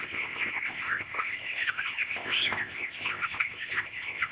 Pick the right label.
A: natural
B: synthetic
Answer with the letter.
B